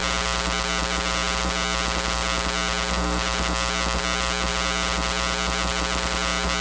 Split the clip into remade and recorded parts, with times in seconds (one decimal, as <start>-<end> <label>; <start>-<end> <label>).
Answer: 0.0-6.6 recorded